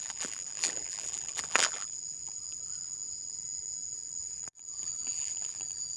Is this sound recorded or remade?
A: remade